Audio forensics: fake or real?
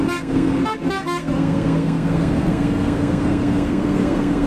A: fake